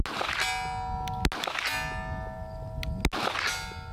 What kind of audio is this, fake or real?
real